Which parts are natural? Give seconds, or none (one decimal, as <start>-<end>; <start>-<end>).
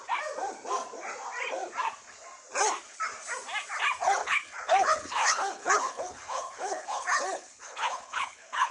0.0-4.2